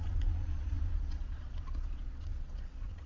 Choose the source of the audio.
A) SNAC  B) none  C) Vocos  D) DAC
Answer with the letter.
C